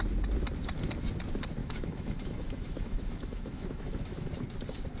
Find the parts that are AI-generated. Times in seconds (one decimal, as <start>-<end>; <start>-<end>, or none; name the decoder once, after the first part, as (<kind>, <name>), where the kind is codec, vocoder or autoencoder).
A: 1.6-4.3 (autoencoder, DAC-VAE)